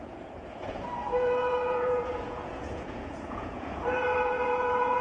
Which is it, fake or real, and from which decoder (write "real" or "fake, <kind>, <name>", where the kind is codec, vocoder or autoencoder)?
fake, vocoder, Vocos